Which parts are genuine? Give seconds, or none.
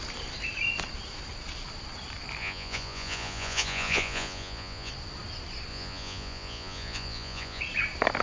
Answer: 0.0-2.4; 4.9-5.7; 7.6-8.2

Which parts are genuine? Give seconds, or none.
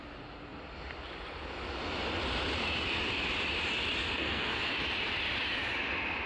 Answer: 0.0-4.0; 4.7-6.3